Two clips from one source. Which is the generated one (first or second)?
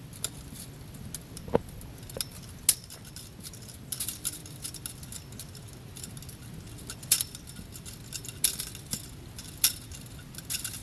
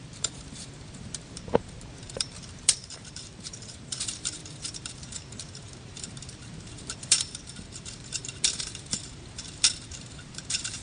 second